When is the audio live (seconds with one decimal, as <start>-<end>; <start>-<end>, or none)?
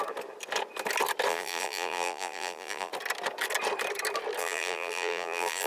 0.0-1.3; 2.9-4.4